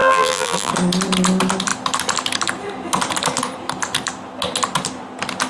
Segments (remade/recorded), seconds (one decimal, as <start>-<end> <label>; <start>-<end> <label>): 0.0-0.7 remade; 0.7-5.5 recorded